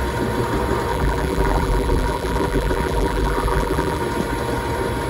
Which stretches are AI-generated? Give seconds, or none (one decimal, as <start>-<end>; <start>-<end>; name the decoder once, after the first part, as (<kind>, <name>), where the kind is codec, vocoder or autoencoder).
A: 0.9-4.0 (vocoder, BigVGAN v2)